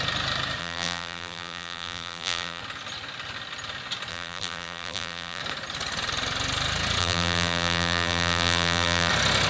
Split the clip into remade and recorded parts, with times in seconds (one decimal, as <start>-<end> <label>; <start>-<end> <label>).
0.0-0.6 recorded; 0.6-2.6 remade; 2.6-4.1 recorded; 4.1-5.4 remade; 5.4-7.0 recorded; 7.0-9.1 remade; 9.1-9.5 recorded